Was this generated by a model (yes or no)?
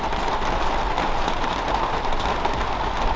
no